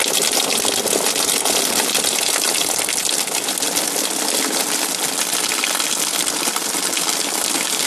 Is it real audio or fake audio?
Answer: real